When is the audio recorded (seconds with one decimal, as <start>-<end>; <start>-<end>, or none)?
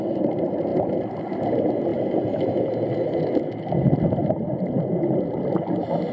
0.0-6.1